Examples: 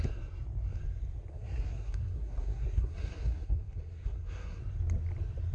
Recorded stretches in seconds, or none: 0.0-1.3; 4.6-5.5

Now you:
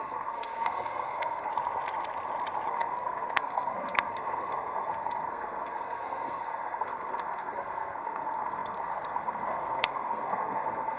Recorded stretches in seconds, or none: 1.5-2.7